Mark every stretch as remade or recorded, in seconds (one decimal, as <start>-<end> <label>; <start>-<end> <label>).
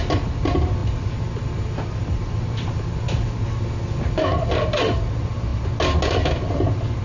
0.0-7.0 recorded